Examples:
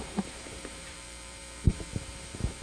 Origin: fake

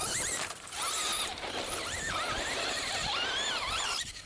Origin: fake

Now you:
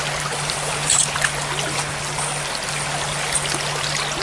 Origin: real